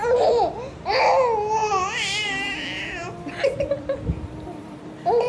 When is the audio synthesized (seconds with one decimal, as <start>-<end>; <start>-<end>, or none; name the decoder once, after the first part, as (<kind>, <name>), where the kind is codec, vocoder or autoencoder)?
0.0-1.0 (vocoder, BigVGAN v2); 1.6-4.8